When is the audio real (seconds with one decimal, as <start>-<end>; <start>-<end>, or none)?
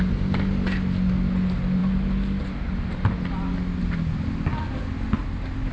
0.0-5.7